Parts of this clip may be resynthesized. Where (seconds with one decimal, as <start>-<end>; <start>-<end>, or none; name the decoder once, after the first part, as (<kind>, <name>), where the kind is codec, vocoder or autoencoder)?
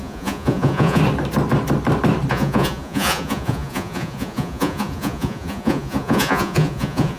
0.0-1.0 (vocoder, Vocos); 2.3-7.2